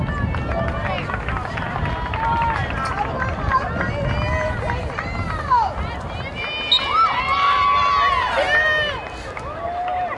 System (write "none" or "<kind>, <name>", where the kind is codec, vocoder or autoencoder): none